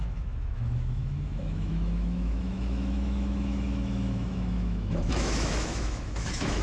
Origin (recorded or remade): remade